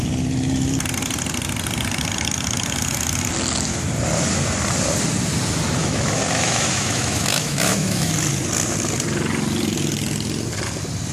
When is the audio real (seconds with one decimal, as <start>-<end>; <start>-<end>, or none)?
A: 0.0-5.8; 8.1-11.1